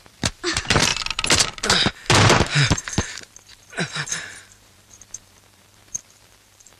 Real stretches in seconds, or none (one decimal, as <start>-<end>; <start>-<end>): 0.9-2.6